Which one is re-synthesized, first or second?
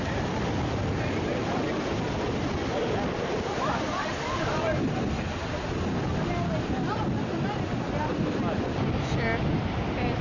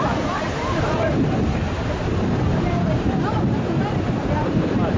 second